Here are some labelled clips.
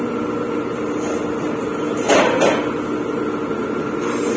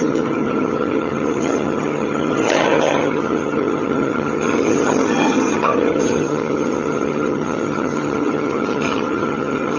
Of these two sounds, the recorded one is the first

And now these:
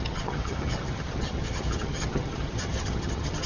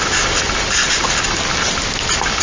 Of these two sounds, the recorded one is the second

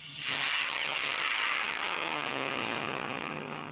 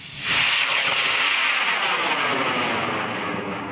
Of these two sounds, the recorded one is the second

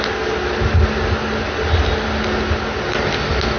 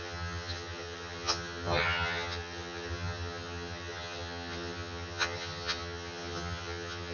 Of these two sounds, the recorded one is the first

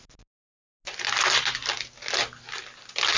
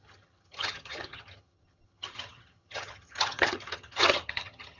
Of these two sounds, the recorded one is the first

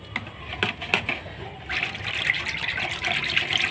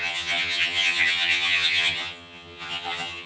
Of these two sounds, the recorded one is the first